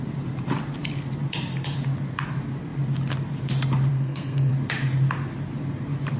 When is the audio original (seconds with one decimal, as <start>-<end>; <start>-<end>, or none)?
0.0-3.9; 4.5-6.2